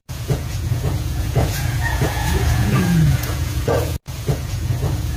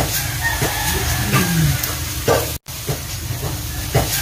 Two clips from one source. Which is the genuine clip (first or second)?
second